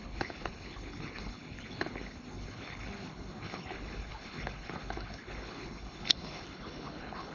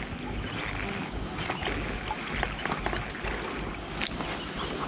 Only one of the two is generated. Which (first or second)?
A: first